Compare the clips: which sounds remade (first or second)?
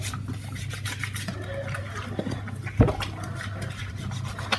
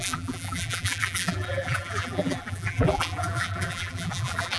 second